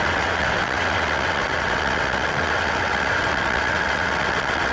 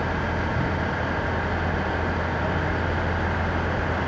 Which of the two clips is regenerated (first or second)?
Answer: first